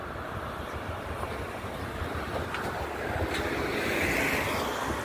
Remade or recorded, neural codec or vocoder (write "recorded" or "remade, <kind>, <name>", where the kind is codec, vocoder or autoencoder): recorded